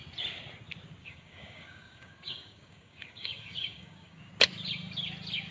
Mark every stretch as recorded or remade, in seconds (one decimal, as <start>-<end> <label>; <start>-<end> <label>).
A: 0.0-1.0 recorded; 1.0-4.3 remade; 4.3-5.5 recorded